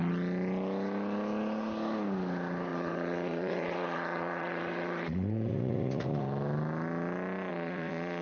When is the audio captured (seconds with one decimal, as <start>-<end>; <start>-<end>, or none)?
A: 0.0-2.7; 6.2-7.5